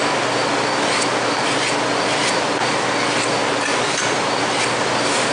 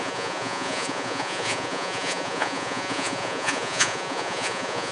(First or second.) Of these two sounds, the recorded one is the first